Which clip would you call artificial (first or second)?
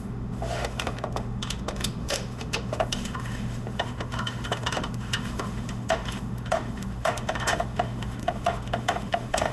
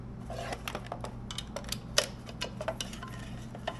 first